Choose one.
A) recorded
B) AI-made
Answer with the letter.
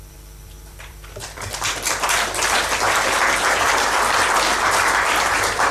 B